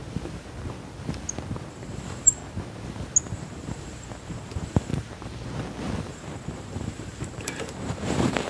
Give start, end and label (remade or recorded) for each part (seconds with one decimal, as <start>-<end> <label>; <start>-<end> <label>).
0.0-1.7 recorded; 1.7-2.4 remade; 2.4-3.2 recorded; 3.2-4.9 remade; 4.9-6.1 recorded; 6.1-8.5 remade